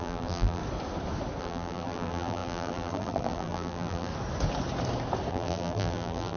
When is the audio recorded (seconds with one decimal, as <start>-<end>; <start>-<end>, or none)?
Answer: 0.6-1.4; 4.1-5.3